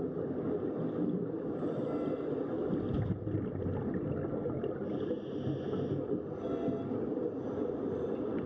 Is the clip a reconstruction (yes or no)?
no